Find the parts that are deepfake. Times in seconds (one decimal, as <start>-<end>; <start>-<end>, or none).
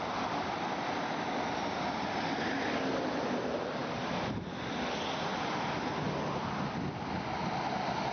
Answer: none